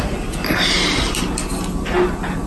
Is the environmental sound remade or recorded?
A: recorded